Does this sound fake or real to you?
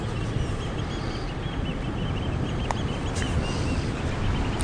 real